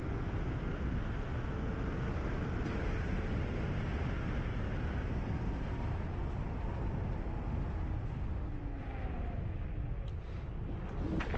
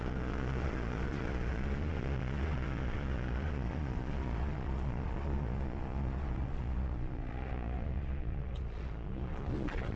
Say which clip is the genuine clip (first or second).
first